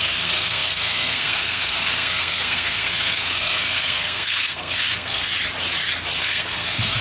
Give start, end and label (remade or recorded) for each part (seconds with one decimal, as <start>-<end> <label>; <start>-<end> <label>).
0.0-5.3 remade; 5.3-6.2 recorded; 6.2-7.0 remade